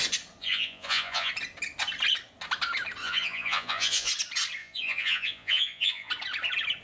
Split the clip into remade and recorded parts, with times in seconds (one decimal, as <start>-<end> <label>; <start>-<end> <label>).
0.0-0.4 recorded; 0.4-1.3 remade; 1.3-3.0 recorded; 3.0-4.1 remade; 4.1-4.6 recorded; 4.6-6.1 remade; 6.1-6.8 recorded